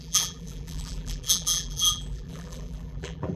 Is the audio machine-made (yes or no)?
yes